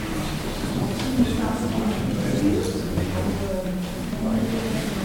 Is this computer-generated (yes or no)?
no